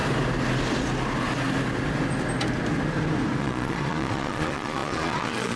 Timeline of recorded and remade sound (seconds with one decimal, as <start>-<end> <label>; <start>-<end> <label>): 0.0-3.4 recorded; 3.4-5.6 remade